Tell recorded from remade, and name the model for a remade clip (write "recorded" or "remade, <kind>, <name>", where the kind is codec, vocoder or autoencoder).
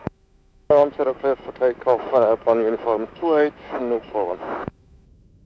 remade, autoencoder, DAC-VAE